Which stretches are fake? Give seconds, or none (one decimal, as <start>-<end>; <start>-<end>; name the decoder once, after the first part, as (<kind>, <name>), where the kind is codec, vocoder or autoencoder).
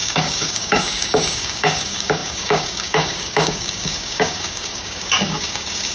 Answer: 0.0-5.9 (codec, DAC)